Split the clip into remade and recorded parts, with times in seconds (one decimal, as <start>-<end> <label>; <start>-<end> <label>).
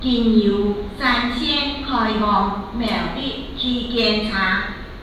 0.0-0.5 recorded; 0.5-3.5 remade; 3.5-5.0 recorded